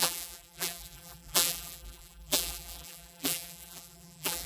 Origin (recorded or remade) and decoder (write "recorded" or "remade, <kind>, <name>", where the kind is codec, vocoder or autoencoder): remade, vocoder, BigVGAN v2